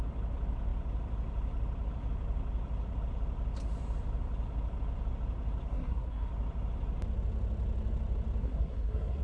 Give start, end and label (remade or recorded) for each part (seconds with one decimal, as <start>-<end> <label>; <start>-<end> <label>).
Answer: 0.0-5.7 recorded; 5.7-6.3 remade; 6.3-8.4 recorded; 8.4-9.2 remade